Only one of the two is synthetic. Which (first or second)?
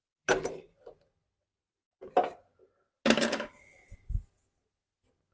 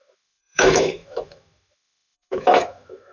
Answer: second